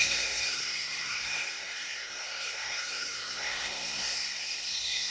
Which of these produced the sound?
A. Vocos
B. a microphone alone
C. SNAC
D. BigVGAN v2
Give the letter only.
C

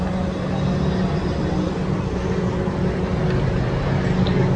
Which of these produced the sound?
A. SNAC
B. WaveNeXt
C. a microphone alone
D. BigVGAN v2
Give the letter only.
C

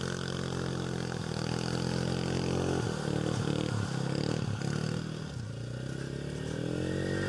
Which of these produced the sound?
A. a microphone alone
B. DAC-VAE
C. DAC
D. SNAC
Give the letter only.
A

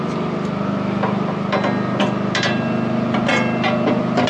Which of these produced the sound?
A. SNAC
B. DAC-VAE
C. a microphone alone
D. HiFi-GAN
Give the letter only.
C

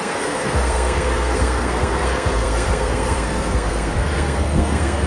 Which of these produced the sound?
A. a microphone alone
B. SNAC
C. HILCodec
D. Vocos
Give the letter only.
B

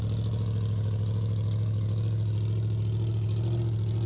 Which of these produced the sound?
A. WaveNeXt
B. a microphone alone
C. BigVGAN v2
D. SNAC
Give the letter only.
B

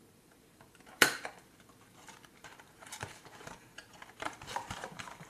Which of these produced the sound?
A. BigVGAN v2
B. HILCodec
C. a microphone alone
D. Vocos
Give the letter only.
A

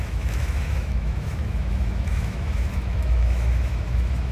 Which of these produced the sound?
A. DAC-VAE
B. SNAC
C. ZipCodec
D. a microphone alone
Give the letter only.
A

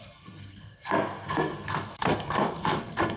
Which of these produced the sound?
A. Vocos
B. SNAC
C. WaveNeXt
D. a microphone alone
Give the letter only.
B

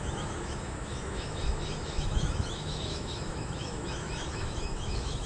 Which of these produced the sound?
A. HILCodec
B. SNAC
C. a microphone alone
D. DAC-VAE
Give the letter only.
D